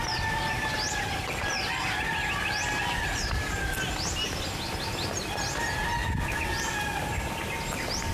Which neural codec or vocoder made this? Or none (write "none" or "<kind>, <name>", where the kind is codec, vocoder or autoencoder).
none